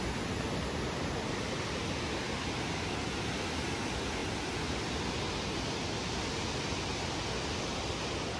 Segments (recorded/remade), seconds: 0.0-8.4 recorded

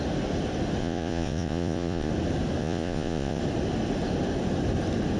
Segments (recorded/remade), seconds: 0.0-0.8 recorded; 0.8-2.1 remade; 2.1-2.6 recorded; 2.6-3.4 remade; 3.4-5.2 recorded